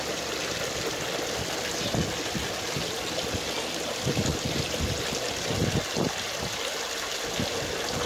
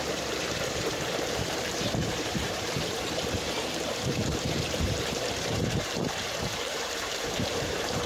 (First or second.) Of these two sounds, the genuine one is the first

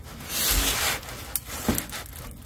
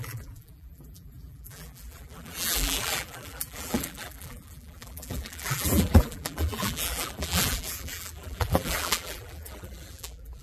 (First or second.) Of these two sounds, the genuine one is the first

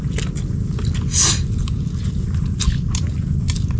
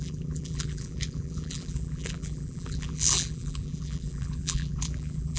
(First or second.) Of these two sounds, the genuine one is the first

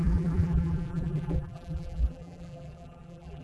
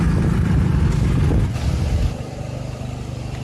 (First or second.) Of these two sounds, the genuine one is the second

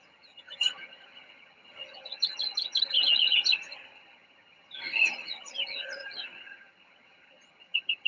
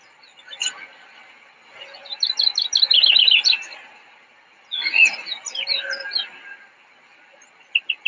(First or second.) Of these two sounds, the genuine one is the second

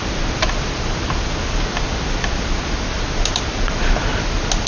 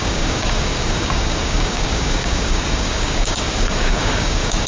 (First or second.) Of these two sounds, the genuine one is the first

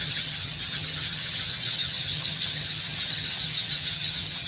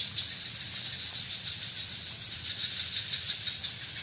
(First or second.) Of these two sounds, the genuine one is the second